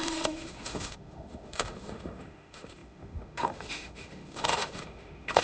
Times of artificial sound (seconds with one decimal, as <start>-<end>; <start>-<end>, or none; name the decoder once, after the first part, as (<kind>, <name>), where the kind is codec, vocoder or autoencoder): 0.0-5.4 (autoencoder, DAC-VAE)